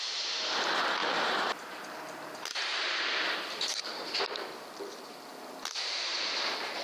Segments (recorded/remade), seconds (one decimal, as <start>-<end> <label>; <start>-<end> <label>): 0.0-3.9 remade; 3.9-5.3 recorded; 5.3-6.8 remade